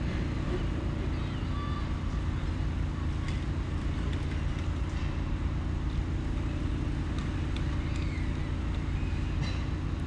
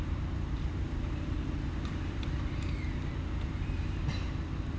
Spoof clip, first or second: second